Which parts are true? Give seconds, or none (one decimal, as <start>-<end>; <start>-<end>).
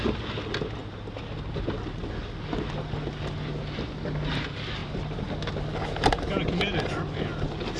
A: 0.0-7.8